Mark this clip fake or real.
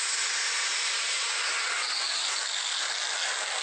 real